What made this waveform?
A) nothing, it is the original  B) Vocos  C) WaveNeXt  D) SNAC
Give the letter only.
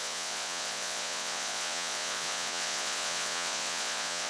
B